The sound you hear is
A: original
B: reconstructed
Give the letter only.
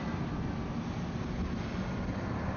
A